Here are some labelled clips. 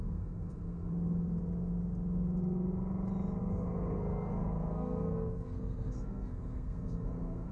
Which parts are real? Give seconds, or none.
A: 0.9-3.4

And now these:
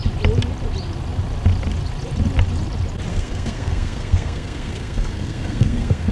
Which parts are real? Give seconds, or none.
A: 0.0-3.1

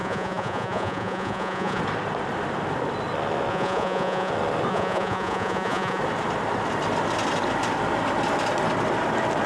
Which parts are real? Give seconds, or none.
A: 1.8-3.5; 4.3-4.7; 6.0-9.5

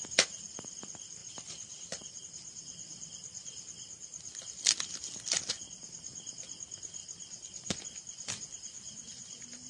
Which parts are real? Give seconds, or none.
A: 0.0-1.2; 2.2-7.0; 7.8-9.7

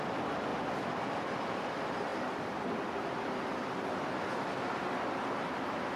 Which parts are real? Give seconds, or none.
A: 0.0-6.0